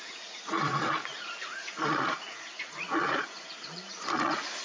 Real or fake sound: fake